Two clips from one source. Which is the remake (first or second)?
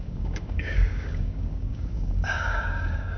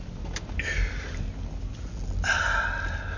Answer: first